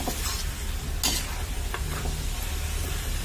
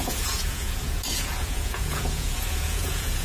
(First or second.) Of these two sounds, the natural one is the first